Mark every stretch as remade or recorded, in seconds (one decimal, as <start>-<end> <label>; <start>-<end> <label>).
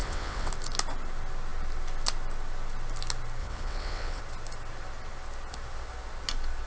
0.0-0.5 remade; 0.5-3.4 recorded; 3.4-4.2 remade; 4.2-6.7 recorded